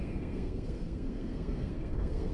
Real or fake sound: fake